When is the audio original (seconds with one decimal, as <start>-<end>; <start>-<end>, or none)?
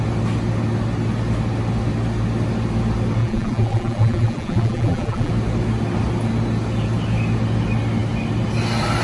0.0-3.2; 5.3-9.0